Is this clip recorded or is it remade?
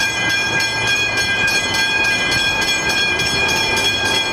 remade